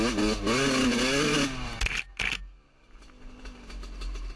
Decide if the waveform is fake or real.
real